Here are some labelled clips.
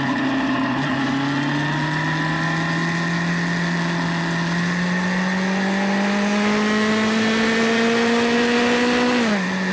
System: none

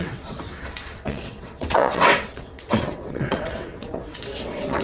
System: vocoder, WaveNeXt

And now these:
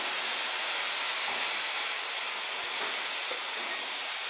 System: none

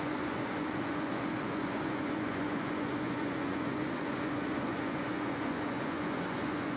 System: vocoder, Vocos